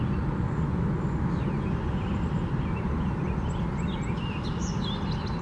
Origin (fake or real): real